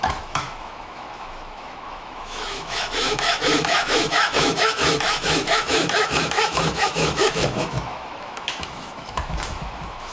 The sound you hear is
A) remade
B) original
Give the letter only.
A